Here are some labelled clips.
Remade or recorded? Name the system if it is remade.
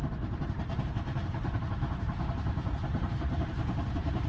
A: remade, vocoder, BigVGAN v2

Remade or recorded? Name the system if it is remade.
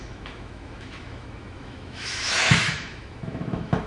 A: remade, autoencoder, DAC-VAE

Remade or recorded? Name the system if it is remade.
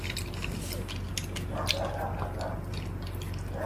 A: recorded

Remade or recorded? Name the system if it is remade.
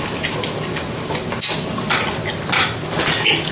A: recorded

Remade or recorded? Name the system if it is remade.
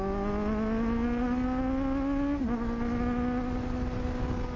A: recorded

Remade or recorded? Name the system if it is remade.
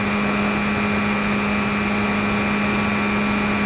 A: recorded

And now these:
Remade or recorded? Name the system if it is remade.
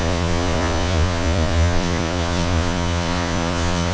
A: remade, vocoder, Vocos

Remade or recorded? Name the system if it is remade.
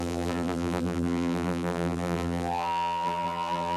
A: remade, vocoder, BigVGAN v2